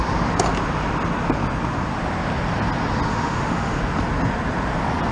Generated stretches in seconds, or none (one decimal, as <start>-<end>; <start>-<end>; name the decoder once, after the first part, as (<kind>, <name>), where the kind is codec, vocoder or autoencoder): 3.1-3.8 (autoencoder, DAC-VAE)